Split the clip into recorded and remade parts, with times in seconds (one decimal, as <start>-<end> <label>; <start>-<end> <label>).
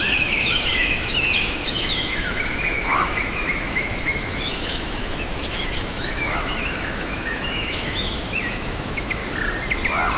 0.0-9.2 remade; 9.2-10.2 recorded